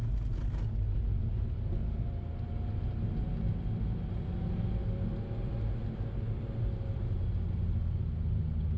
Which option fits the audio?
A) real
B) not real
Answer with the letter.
A